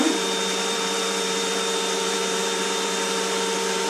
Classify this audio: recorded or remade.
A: remade